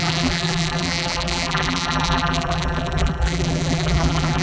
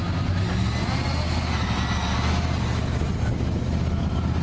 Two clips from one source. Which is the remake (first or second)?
first